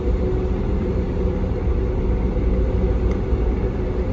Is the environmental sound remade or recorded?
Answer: recorded